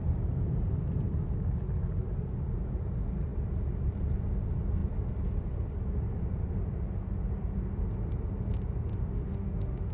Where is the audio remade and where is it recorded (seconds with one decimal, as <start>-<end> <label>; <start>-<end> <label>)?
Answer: 0.0-8.9 recorded; 8.9-9.9 remade

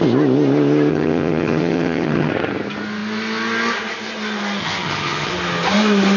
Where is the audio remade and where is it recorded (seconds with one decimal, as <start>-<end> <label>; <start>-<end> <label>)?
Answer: 0.0-0.9 recorded; 0.9-2.3 remade; 2.3-4.6 recorded; 4.6-5.3 remade; 5.3-6.2 recorded

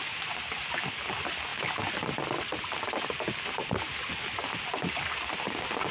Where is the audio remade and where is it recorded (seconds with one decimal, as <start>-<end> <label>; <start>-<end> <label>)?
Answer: 0.0-5.9 recorded